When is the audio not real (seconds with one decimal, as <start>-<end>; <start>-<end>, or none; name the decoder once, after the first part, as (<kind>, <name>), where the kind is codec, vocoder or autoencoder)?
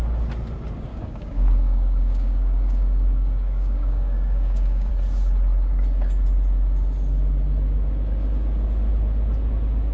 0.9-4.9 (codec, DAC)